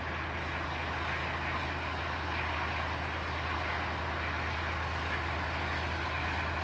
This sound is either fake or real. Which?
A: real